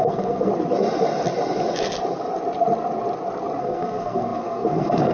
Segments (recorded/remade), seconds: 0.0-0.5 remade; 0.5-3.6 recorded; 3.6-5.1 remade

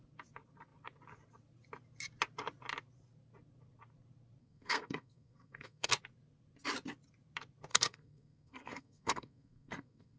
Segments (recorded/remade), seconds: 0.0-4.4 recorded; 4.4-5.9 remade; 5.9-7.7 recorded; 7.7-10.2 remade

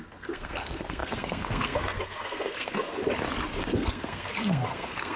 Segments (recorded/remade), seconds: 0.0-3.0 remade; 3.0-3.6 recorded; 3.6-5.2 remade

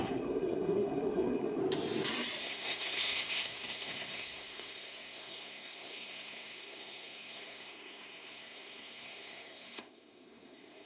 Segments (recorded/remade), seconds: 0.0-1.6 remade; 1.6-2.4 recorded; 2.4-10.9 remade